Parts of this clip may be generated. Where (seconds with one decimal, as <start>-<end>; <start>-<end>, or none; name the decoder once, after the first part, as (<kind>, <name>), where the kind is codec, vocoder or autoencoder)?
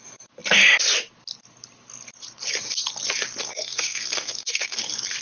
3.4-4.8 (codec, SNAC)